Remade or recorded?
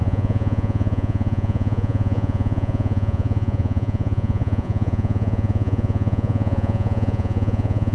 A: remade